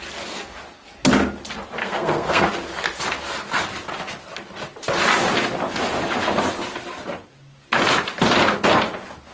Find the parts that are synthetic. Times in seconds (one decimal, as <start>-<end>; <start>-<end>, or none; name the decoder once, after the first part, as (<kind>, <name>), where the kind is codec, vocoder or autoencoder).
1.8-2.5 (codec, SNAC)